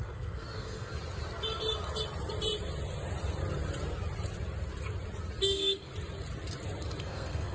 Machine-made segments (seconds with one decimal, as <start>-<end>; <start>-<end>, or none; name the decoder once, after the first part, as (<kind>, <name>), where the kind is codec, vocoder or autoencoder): 0.0-0.9 (codec, SNAC); 5.4-5.9; 7.0-7.5

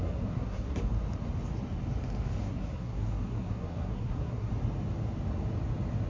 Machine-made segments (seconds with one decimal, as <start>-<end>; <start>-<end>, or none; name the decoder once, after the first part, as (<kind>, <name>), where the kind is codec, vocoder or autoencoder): 0.0-0.8 (codec, SNAC); 2.4-4.5

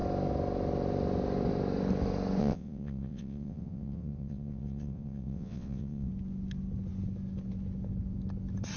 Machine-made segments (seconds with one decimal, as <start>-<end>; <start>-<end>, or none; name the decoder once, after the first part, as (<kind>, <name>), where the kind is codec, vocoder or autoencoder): 2.4-6.1 (vocoder, WaveNeXt)

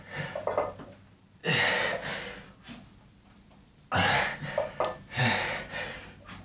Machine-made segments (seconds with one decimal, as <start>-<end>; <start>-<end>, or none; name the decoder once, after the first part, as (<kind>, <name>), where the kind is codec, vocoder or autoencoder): none

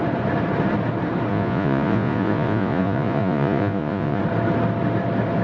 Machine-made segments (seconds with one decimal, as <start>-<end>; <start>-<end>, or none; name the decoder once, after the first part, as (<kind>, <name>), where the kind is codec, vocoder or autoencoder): 1.3-4.2 (vocoder, Vocos)

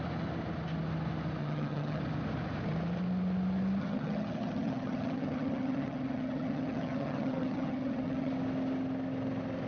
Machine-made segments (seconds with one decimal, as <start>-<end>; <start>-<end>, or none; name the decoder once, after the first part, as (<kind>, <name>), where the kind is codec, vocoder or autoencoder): 1.4-2.0 (vocoder, HiFi-GAN); 3.8-8.3

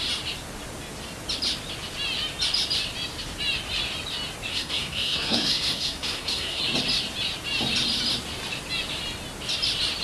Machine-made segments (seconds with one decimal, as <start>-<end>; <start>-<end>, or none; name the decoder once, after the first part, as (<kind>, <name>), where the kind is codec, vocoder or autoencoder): 4.5-6.6 (codec, SNAC)

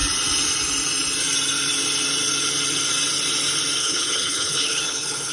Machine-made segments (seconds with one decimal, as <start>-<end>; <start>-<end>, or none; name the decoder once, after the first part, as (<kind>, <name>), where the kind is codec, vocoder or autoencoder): 3.8-5.3 (codec, HILCodec)